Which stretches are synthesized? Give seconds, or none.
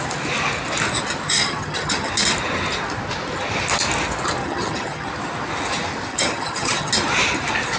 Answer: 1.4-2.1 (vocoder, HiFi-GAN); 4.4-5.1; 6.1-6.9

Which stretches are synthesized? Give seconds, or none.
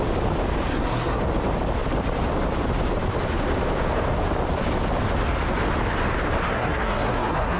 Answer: 0.7-1.2 (codec, SNAC); 6.5-7.6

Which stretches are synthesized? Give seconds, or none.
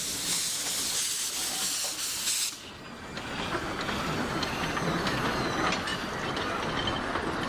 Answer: none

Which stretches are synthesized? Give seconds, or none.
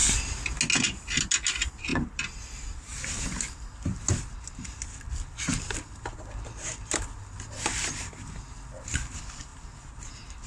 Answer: 1.9-2.4 (vocoder, BigVGAN v2)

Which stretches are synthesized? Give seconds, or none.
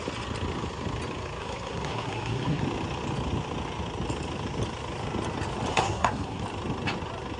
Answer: 1.4-2.6 (codec, SNAC); 5.7-6.4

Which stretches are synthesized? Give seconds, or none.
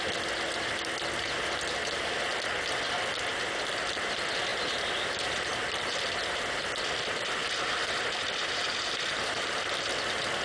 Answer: 4.5-5.6 (vocoder, BigVGAN v2); 7.4-9.7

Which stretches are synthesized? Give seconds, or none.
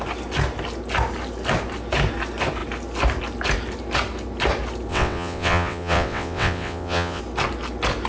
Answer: 4.9-7.2 (vocoder, WaveNeXt)